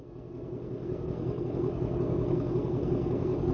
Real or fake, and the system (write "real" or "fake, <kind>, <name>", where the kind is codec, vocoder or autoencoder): fake, codec, SNAC